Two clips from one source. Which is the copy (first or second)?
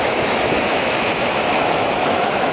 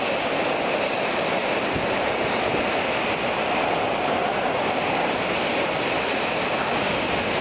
first